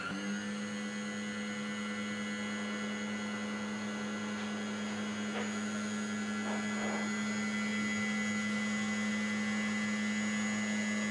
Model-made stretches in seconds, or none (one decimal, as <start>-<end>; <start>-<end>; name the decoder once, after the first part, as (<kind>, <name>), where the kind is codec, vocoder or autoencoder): none